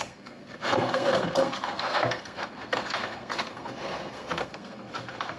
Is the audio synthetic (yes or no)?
yes